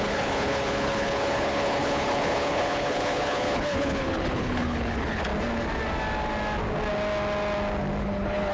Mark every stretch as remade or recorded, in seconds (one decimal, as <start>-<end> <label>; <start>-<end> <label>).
0.0-5.3 remade; 5.3-8.0 recorded; 8.0-8.5 remade